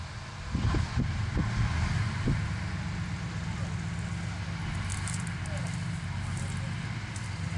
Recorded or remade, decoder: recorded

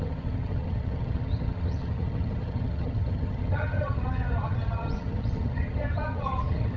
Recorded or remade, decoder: remade, vocoder, HiFi-GAN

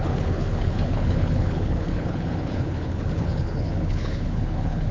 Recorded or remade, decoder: remade, codec, HILCodec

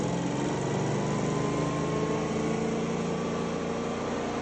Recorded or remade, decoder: recorded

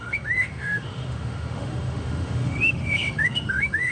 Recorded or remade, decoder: remade, autoencoder, DAC-VAE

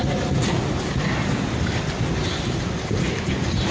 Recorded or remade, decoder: recorded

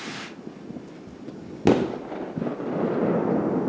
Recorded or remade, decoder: recorded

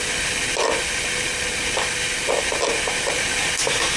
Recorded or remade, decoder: recorded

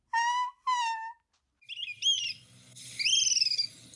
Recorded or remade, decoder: recorded